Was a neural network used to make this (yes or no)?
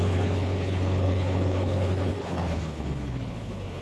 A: yes